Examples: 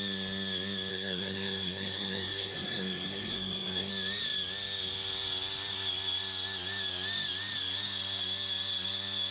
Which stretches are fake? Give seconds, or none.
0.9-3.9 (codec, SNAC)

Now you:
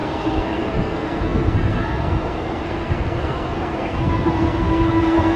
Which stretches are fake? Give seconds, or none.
0.0-5.4 (codec, SNAC)